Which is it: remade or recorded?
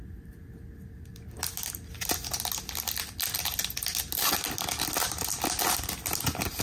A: recorded